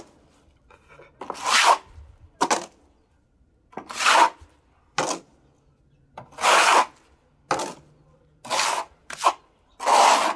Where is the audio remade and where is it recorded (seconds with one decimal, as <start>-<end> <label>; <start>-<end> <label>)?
0.0-10.4 recorded

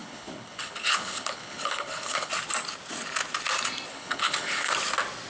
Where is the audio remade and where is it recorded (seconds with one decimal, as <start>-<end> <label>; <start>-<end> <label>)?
0.0-2.3 remade; 2.3-3.9 recorded; 3.9-4.7 remade; 4.7-5.3 recorded

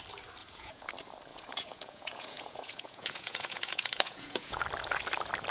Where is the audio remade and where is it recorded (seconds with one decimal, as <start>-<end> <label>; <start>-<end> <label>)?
0.0-0.4 recorded; 0.4-0.9 remade; 0.9-1.3 recorded; 1.3-4.6 remade; 4.6-5.5 recorded

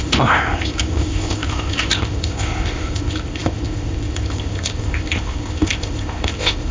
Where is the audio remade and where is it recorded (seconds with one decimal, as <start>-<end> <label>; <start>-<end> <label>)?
0.0-6.7 remade

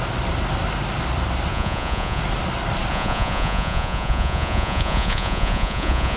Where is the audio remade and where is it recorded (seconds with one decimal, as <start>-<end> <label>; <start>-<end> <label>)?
0.0-1.5 recorded; 1.5-2.2 remade; 2.2-2.9 recorded; 2.9-6.2 remade